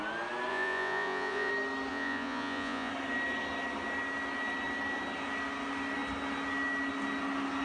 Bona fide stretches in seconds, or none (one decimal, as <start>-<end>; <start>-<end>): 0.0-0.5; 1.5-1.9; 2.9-7.6